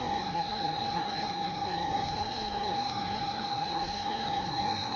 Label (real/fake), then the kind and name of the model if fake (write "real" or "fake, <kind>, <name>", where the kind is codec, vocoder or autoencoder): fake, codec, SNAC